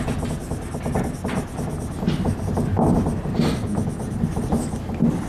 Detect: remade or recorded recorded